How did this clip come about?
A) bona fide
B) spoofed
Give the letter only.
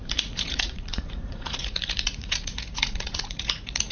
B